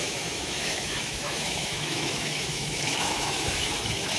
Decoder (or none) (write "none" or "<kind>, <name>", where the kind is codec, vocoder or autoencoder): autoencoder, DAC-VAE